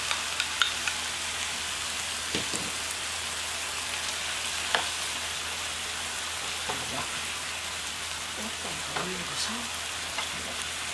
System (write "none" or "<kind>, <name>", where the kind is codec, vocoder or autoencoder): none